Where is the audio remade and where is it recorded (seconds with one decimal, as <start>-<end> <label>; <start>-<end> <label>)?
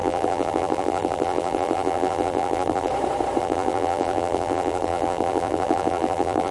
0.0-2.9 remade; 2.9-3.4 recorded; 3.4-6.5 remade